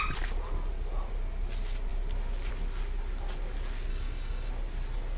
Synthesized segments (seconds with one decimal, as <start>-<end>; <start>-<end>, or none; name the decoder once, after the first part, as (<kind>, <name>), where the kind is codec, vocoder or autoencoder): 3.9-4.5 (codec, DAC)